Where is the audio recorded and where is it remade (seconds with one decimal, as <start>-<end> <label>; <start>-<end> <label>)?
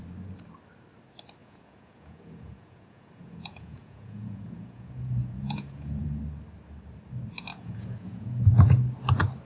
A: 0.0-1.4 recorded; 1.4-6.2 remade; 6.2-7.5 recorded; 7.5-8.8 remade; 8.8-9.4 recorded